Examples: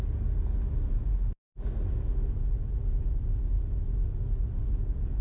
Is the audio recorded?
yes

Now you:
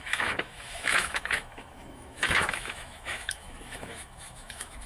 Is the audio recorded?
no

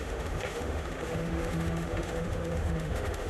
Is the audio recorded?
no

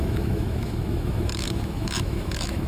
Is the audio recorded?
no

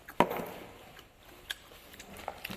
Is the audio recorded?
yes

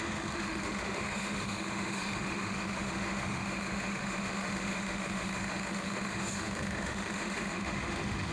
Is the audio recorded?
no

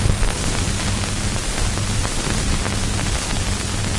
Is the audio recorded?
yes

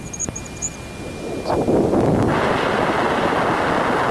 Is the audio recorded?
yes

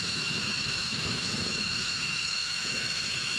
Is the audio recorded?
no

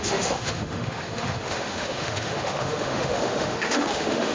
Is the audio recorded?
no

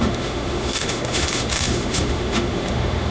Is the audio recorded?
no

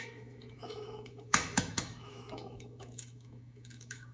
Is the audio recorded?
no